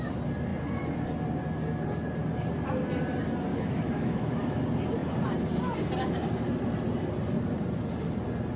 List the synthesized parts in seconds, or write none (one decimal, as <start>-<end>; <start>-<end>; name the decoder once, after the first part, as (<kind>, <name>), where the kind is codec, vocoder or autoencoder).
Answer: 3.5-4.6 (autoencoder, DAC-VAE)